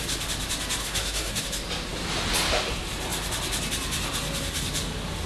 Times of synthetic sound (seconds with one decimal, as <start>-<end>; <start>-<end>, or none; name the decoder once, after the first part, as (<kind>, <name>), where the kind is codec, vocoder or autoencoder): 0.8-1.4 (codec, SNAC)